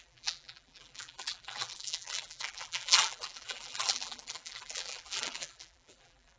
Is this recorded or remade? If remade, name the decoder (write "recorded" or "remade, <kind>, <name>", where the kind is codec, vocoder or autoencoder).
remade, vocoder, BigVGAN v2